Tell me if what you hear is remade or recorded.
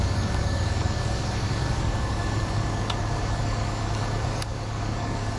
remade